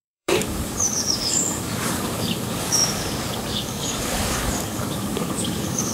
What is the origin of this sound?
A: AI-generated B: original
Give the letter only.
A